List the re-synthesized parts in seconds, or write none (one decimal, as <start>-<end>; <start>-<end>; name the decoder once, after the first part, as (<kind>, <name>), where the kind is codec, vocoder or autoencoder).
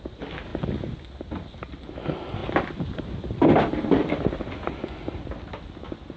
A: none